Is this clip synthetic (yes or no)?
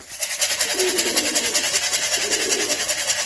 no